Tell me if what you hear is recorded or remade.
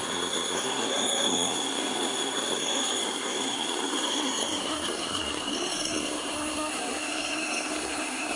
remade